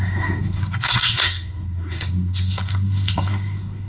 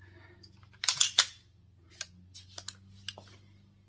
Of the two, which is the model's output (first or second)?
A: first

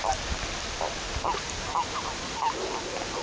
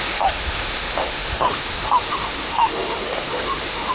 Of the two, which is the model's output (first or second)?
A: second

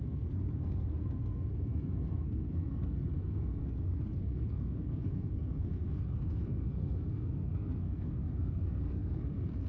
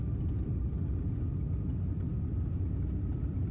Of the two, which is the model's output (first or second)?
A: first